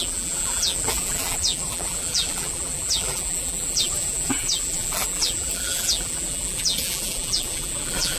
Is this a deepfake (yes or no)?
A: yes